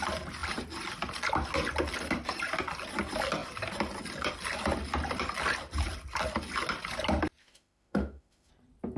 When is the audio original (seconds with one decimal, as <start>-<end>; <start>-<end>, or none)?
0.0-7.4; 8.5-9.0